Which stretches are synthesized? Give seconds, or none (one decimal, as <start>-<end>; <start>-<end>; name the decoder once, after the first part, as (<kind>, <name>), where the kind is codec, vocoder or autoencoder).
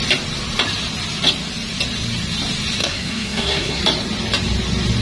2.8-3.8 (codec, SNAC)